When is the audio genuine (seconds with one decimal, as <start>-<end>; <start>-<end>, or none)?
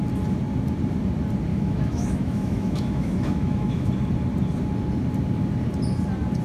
0.0-1.5; 3.9-6.4